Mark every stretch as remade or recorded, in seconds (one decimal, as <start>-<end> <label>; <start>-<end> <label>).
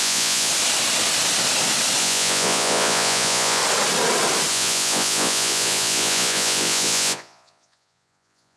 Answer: 0.0-0.5 remade; 0.5-2.0 recorded; 2.0-3.6 remade; 3.6-4.5 recorded; 4.5-8.6 remade